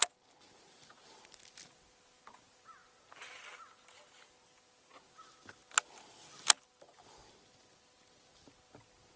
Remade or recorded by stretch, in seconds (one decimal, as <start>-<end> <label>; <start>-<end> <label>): 0.0-9.2 recorded